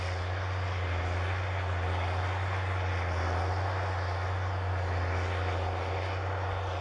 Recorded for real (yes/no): yes